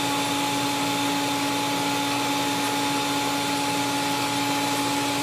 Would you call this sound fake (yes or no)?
no